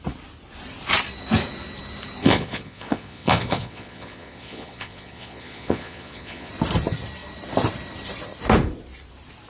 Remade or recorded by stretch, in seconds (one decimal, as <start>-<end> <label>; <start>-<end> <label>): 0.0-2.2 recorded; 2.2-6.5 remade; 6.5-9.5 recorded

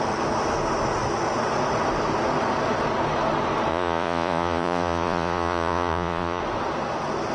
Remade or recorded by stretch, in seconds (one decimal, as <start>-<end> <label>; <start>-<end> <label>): 0.0-3.7 recorded; 3.7-6.4 remade; 6.4-7.3 recorded

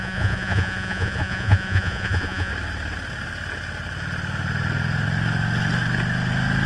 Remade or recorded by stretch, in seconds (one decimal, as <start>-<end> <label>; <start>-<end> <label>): 0.0-2.5 remade; 2.5-6.7 recorded